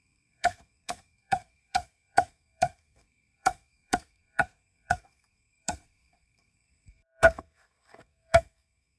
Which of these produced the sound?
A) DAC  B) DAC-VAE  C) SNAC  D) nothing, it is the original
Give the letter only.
C